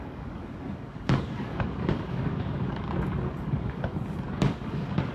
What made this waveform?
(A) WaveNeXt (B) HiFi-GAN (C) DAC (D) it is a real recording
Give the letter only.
C